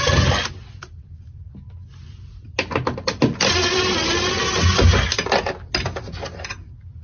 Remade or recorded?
recorded